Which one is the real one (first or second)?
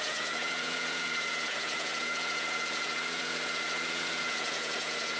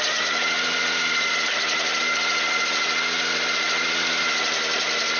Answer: second